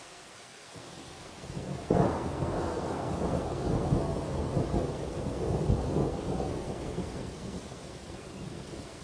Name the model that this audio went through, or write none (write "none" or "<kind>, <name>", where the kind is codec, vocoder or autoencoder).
codec, SNAC